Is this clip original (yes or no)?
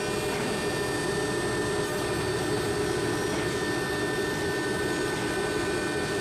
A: yes